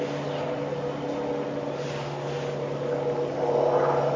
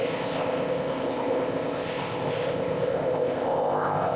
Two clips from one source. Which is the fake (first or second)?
second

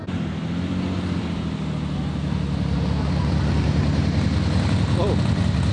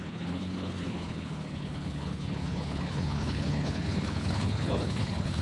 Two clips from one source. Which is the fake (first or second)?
second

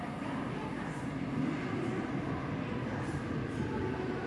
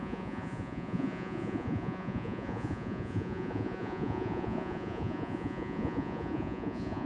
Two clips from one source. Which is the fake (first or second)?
second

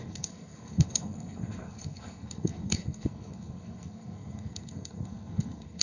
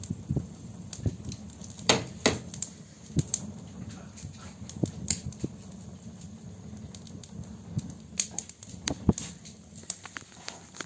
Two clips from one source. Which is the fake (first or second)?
first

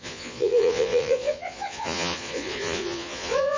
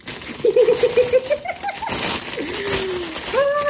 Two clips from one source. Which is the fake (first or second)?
first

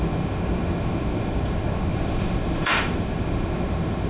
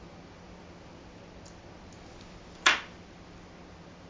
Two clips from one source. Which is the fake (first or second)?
first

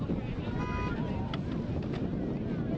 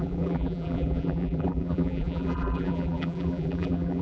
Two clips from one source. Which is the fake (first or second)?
second